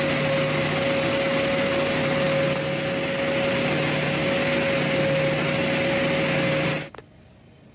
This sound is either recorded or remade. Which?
recorded